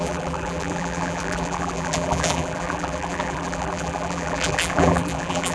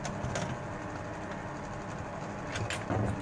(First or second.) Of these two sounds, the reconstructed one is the first